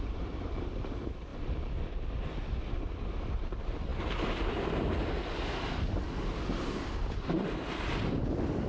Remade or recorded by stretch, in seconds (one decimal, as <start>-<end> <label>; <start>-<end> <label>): 0.0-8.7 recorded